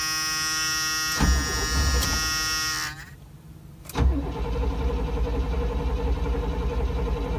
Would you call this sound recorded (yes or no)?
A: yes